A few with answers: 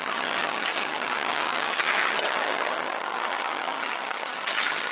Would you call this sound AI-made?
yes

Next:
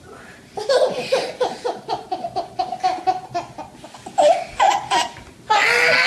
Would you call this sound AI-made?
no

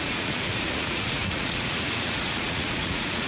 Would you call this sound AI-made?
yes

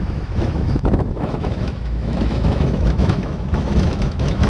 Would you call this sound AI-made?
yes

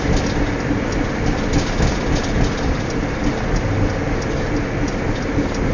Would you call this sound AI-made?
no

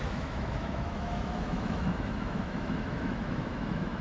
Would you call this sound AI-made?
yes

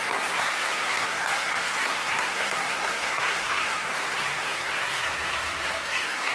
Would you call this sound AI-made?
yes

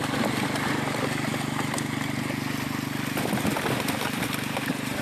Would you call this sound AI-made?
no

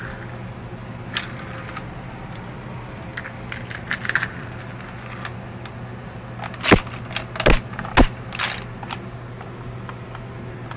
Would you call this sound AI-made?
no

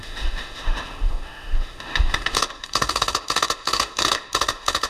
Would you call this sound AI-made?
yes